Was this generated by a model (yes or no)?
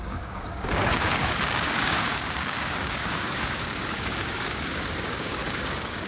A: yes